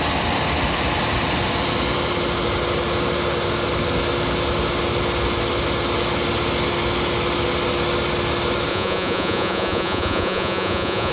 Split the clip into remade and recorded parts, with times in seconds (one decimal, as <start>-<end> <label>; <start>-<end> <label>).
0.0-8.7 recorded; 8.7-11.1 remade